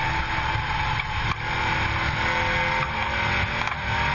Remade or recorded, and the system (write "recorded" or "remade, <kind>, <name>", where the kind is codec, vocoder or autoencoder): recorded